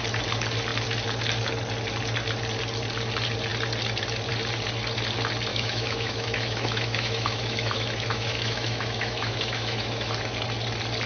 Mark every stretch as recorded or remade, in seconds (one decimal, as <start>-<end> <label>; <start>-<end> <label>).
0.0-5.5 recorded; 5.5-10.1 remade; 10.1-11.1 recorded